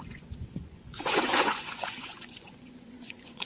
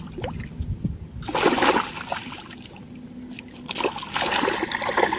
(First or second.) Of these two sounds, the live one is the second